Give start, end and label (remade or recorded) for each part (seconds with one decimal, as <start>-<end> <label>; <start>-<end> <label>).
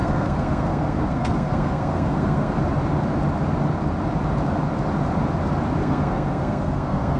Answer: 0.0-2.6 remade; 2.6-5.8 recorded; 5.8-7.2 remade